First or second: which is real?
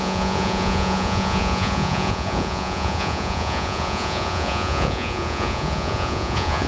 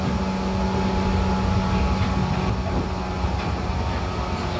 second